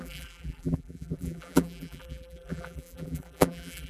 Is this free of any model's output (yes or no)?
no